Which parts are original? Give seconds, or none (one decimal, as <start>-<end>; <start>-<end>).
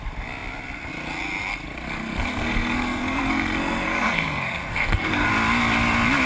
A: 0.0-1.5; 5.3-6.3